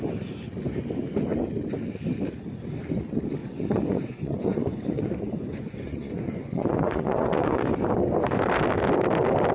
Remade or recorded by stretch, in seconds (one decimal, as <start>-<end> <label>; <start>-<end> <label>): 0.0-3.4 recorded; 3.4-7.6 remade; 7.6-9.5 recorded